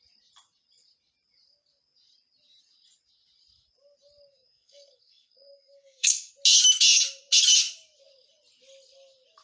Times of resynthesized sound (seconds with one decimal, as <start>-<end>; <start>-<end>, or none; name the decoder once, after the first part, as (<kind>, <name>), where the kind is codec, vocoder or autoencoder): 4.3-6.3 (codec, SNAC)